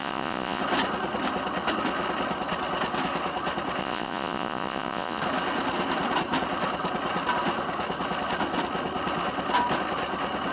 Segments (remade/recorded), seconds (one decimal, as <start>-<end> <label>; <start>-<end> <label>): 0.0-0.6 remade; 0.6-3.8 recorded; 3.8-5.2 remade; 5.2-10.5 recorded